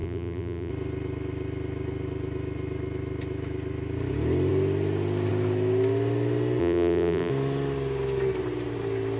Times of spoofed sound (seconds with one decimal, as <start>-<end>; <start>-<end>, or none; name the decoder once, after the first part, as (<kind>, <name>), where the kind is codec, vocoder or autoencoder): 0.0-0.7 (vocoder, BigVGAN v2); 6.6-7.3